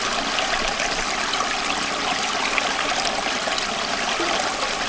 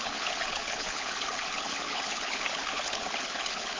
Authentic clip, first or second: first